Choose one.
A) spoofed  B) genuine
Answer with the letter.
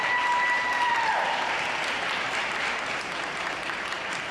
A